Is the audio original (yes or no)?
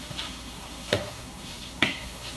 no